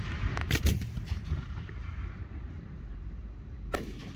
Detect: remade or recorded remade